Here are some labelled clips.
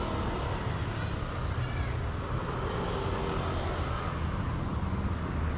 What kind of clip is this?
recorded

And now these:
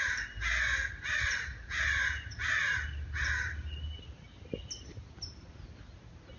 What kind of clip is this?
recorded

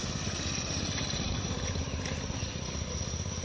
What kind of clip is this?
recorded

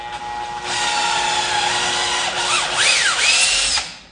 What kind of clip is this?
recorded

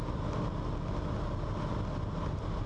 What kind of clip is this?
recorded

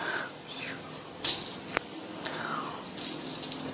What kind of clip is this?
remade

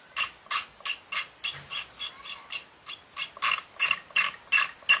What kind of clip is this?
recorded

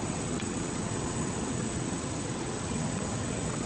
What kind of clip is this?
remade